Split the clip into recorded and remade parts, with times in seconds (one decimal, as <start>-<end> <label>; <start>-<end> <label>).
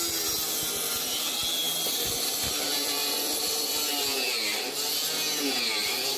0.0-6.2 recorded